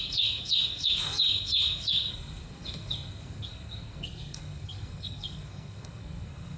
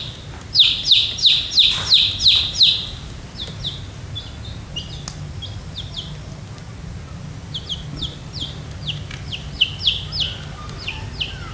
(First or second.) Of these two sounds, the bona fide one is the second